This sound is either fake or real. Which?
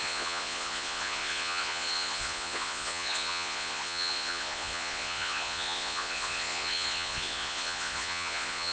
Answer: fake